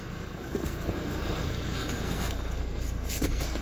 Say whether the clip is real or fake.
fake